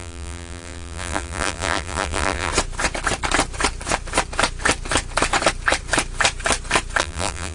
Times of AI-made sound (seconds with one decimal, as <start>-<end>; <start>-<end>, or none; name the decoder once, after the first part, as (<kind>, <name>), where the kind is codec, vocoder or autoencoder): 0.0-2.5 (vocoder, BigVGAN v2); 7.0-7.5